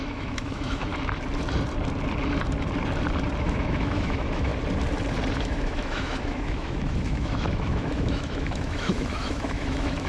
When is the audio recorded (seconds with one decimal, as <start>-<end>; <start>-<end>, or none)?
0.9-3.4; 4.5-5.4